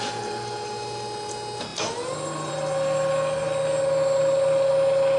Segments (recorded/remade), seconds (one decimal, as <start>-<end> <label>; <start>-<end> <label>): 0.0-5.2 recorded